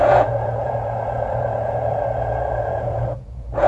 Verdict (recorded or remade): remade